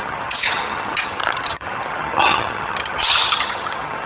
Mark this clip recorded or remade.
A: remade